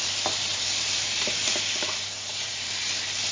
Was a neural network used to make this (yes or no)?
no